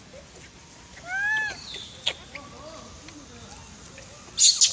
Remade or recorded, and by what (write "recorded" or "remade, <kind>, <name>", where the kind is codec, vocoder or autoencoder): recorded